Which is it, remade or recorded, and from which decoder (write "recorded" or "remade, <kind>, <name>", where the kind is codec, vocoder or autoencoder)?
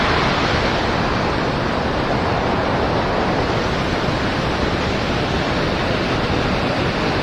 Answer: recorded